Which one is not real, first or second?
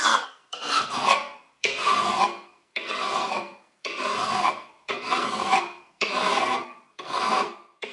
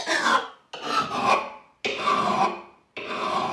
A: first